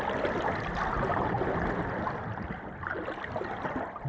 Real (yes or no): yes